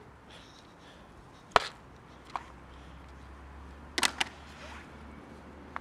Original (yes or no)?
yes